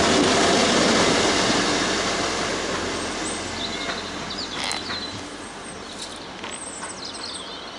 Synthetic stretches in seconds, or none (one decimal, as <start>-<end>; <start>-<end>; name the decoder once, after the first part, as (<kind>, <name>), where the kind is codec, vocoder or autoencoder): none